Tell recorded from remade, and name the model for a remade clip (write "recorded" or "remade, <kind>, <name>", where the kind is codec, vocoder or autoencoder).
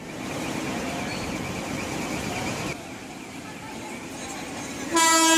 recorded